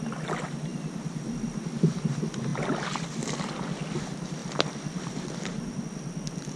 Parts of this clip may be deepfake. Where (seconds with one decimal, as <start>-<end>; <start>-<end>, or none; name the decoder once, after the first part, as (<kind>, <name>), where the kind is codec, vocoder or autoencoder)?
0.7-1.6 (vocoder, BigVGAN v2); 4.4-5.8